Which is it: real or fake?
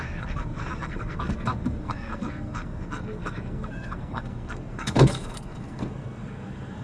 fake